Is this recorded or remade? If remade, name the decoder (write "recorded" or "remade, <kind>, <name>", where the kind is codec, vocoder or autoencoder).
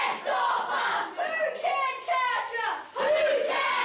recorded